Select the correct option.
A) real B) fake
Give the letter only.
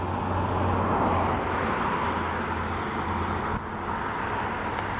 A